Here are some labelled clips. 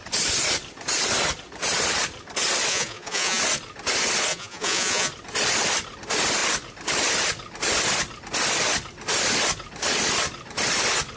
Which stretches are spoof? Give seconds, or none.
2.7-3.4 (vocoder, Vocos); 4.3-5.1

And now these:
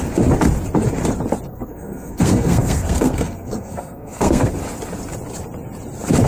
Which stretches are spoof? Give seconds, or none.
1.5-4.5 (codec, SNAC)

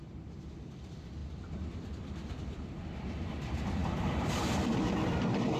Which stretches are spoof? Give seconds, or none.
1.2-2.8 (vocoder, BigVGAN v2); 3.8-4.5

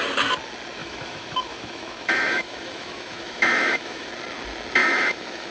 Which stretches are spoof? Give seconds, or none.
0.8-4.1 (autoencoder, DAC-VAE); 4.8-5.5

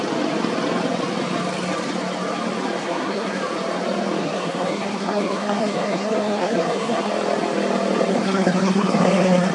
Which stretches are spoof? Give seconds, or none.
2.8-3.4 (codec, SNAC); 4.2-7.1; 8.1-9.5

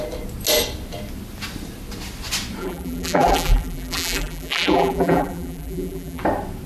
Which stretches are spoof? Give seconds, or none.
2.6-6.2 (vocoder, BigVGAN v2)

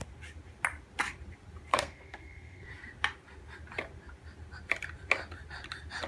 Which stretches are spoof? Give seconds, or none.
1.7-2.7 (codec, SNAC)